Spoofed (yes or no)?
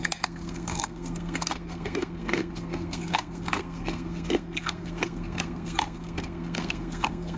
yes